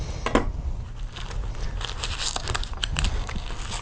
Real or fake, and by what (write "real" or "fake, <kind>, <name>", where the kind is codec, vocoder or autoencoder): real